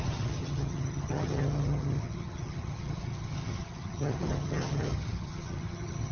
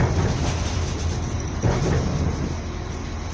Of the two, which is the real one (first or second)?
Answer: second